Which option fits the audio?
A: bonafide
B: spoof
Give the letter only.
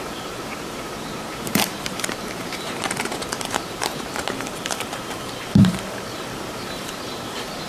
B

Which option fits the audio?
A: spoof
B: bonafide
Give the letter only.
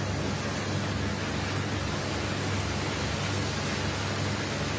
B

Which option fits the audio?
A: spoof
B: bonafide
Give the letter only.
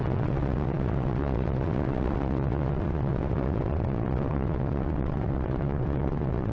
A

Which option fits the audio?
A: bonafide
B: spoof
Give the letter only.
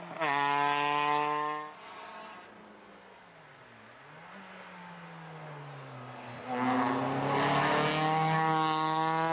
A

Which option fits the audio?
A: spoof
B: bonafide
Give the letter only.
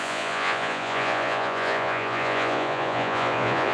A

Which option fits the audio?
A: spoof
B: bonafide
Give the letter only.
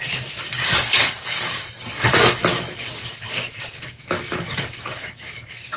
A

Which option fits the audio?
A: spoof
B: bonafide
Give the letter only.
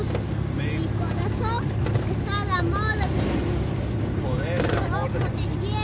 B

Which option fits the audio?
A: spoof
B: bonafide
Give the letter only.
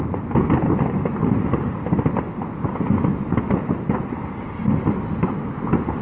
B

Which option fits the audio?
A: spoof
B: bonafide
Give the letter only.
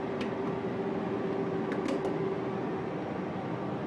B